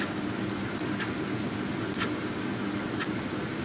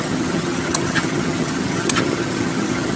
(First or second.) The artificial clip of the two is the second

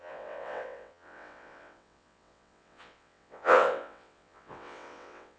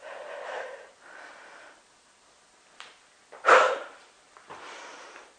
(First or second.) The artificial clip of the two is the first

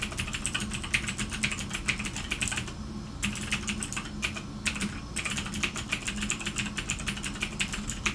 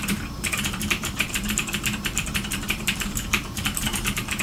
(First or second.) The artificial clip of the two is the second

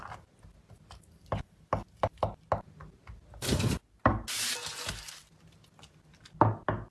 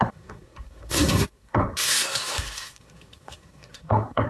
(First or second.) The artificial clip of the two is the second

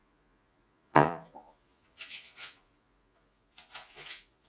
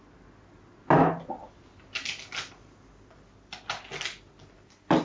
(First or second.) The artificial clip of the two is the first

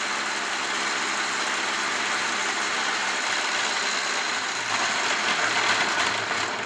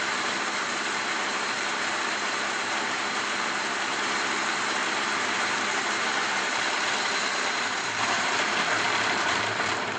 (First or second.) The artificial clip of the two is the second